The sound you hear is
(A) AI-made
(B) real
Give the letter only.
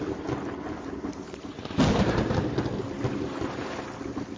B